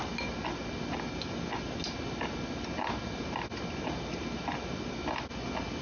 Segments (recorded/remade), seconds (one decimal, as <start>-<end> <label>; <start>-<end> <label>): 0.0-5.8 recorded